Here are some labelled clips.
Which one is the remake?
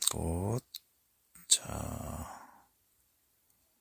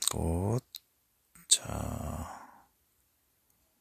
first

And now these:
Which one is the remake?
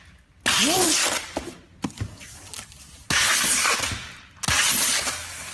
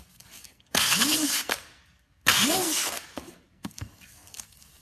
second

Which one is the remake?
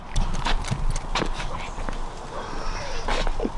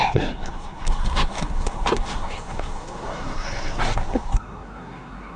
second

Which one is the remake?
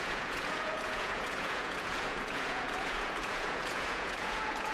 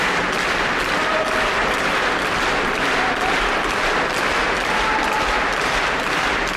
first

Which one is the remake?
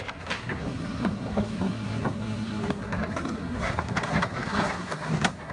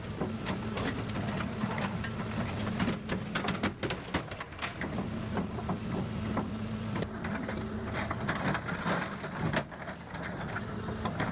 first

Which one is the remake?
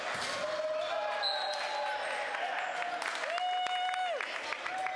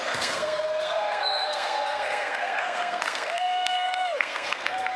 second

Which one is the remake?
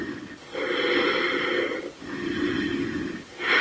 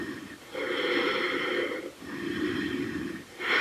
second